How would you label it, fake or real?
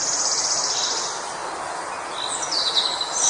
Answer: real